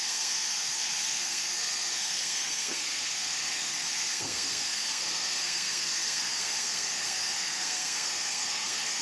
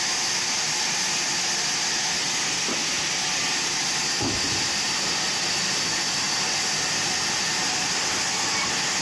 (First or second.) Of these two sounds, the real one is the second